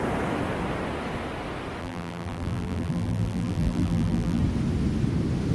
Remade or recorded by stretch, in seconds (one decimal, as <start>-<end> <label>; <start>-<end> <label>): 0.0-1.8 recorded; 1.8-4.4 remade; 4.4-5.5 recorded